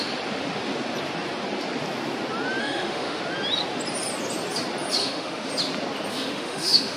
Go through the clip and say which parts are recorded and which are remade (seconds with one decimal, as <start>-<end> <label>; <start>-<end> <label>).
0.0-2.6 recorded; 2.6-3.2 remade; 3.2-5.0 recorded; 5.0-5.5 remade; 5.5-6.1 recorded; 6.1-7.0 remade